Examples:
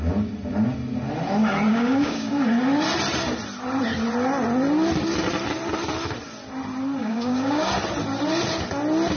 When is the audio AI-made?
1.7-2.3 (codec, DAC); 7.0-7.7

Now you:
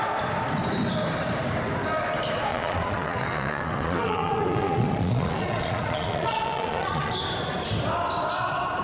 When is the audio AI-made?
2.5-7.1 (vocoder, Vocos)

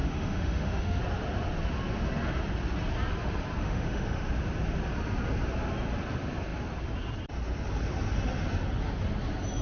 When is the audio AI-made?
0.0-1.0 (autoencoder, DAC-VAE); 3.6-4.3

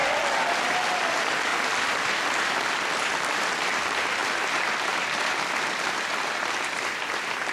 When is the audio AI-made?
0.8-1.5 (vocoder, BigVGAN v2); 3.5-7.5

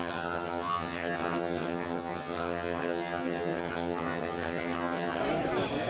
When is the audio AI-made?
0.0-5.2 (vocoder, HiFi-GAN)

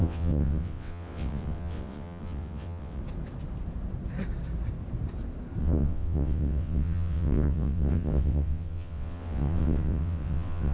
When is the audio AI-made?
0.0-3.0 (vocoder, WaveNeXt); 5.6-10.7